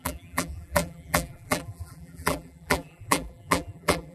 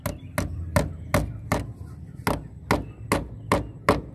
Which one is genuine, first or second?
second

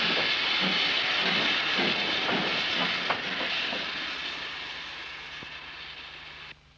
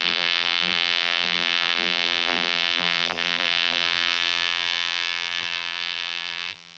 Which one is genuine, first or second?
first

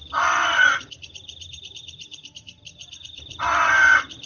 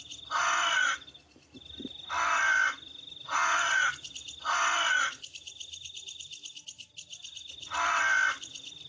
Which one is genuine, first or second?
second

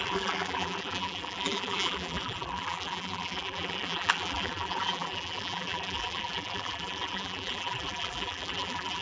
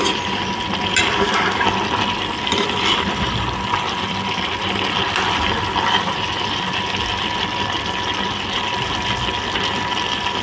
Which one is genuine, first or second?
second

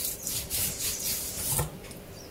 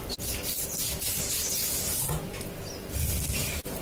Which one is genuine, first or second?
second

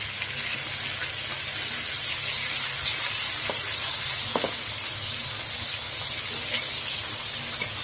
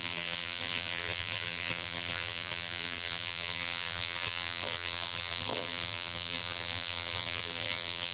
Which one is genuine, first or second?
first